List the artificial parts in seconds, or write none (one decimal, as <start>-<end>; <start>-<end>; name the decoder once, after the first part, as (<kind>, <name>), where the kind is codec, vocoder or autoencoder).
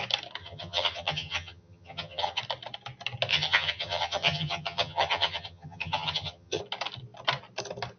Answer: 0.4-2.4 (vocoder, HiFi-GAN); 3.3-6.6